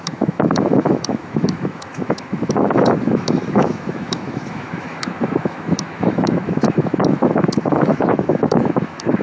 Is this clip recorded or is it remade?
remade